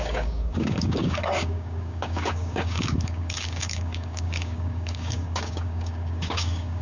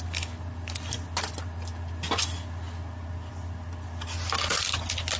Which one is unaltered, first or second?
second